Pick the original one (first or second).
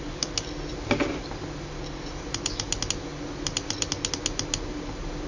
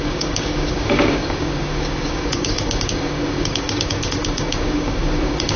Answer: first